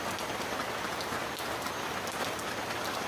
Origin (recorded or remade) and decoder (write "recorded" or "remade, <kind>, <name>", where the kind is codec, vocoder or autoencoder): recorded